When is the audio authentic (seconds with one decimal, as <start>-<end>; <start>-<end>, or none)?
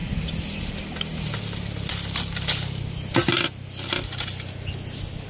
0.0-5.3